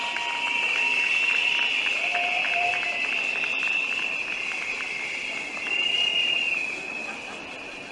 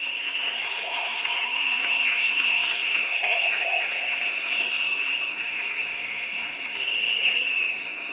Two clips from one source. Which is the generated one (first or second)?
second